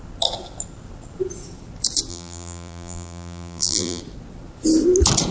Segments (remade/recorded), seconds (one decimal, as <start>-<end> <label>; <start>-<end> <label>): 0.0-2.1 recorded; 2.1-4.0 remade; 4.0-5.3 recorded